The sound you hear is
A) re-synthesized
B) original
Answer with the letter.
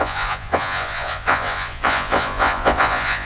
A